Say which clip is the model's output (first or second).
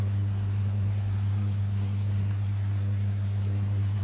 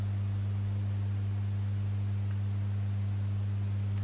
first